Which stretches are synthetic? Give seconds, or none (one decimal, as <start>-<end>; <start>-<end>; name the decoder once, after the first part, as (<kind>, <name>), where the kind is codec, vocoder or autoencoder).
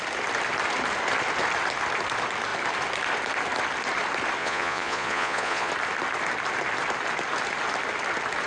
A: 4.4-5.7 (vocoder, Vocos)